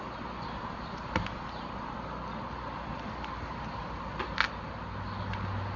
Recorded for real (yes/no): yes